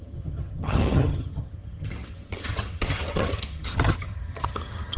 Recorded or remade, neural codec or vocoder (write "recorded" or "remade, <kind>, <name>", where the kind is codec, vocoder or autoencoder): remade, vocoder, HiFi-GAN